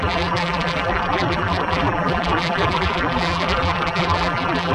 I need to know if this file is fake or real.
fake